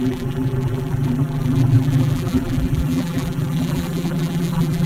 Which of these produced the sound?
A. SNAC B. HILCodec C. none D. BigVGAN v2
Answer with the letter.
D